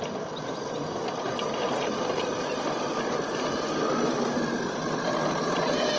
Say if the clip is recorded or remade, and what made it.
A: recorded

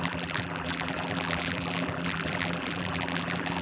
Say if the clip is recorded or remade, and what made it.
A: remade, vocoder, BigVGAN v2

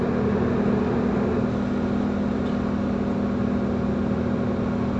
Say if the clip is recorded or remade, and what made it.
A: recorded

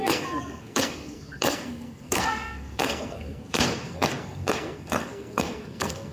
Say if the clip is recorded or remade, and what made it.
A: remade, codec, SNAC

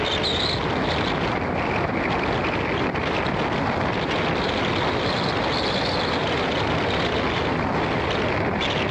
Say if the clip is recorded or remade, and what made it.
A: recorded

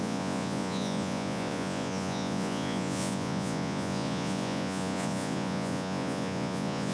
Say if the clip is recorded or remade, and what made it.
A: remade, vocoder, Vocos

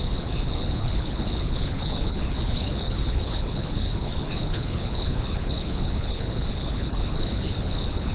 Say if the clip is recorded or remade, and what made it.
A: remade, codec, HILCodec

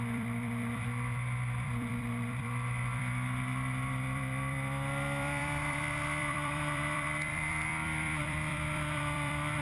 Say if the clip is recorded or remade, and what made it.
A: remade, vocoder, BigVGAN v2